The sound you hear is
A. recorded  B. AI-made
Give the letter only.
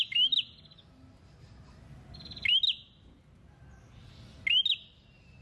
A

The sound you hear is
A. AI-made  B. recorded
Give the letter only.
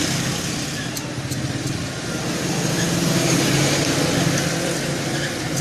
B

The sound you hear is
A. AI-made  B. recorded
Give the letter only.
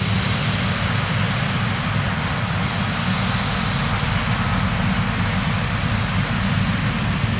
B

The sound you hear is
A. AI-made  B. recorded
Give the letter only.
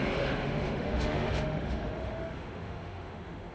A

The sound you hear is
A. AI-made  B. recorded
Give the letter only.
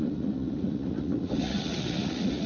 A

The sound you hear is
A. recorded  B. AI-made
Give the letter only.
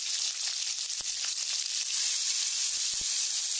A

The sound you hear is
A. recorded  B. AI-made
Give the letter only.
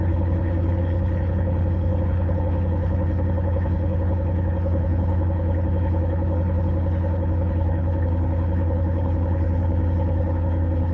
B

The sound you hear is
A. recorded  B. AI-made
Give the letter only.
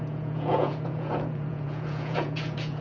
B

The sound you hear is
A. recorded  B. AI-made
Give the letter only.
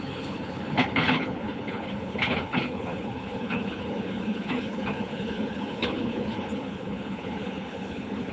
B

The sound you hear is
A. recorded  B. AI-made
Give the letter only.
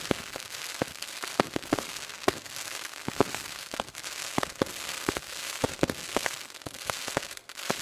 B